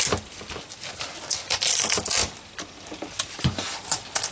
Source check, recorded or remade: recorded